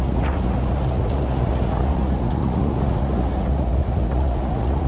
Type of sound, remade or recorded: remade